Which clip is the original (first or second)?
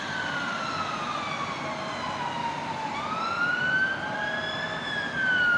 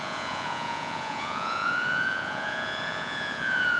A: first